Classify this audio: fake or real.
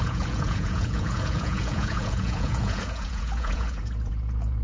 fake